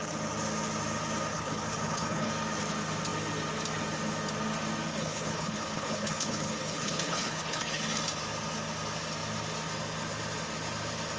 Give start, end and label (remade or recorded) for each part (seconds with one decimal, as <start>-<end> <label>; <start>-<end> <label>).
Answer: 0.0-1.3 recorded; 1.3-2.3 remade; 2.3-4.9 recorded; 4.9-7.8 remade; 7.8-11.2 recorded